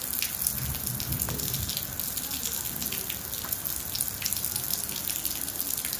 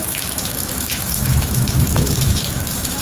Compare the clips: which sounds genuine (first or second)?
first